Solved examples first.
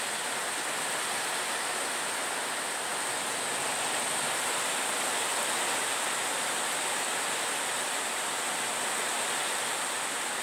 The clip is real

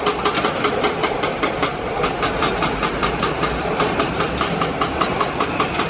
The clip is fake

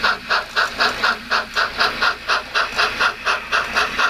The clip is real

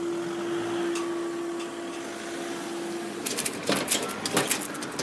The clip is real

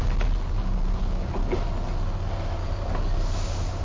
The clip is real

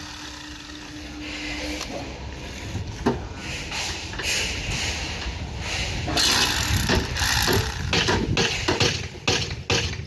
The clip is real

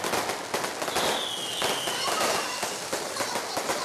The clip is real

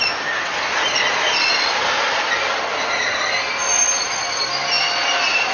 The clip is real